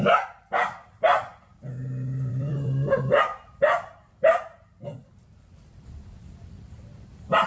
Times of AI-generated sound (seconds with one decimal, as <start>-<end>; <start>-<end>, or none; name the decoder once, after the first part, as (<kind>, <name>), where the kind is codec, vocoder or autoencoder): 0.0-3.3 (vocoder, BigVGAN v2); 5.3-7.5